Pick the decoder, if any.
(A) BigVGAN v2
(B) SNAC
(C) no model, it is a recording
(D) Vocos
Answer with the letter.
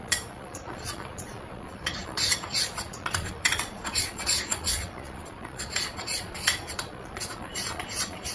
D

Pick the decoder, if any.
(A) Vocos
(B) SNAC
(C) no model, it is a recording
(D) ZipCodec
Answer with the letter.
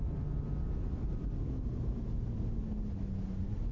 C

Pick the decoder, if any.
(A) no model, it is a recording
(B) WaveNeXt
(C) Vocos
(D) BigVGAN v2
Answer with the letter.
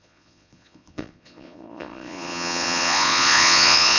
C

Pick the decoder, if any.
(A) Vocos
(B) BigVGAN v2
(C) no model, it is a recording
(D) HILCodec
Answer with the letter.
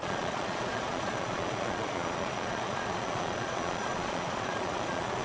A